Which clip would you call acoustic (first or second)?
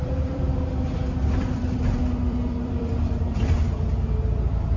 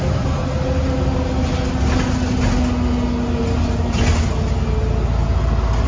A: second